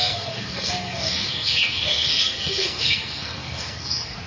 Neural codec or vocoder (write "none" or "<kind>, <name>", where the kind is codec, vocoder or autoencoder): codec, SNAC